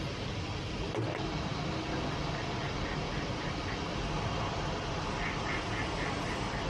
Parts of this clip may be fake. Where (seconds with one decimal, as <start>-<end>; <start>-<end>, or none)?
0.0-6.7